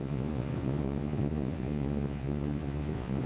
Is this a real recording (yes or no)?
no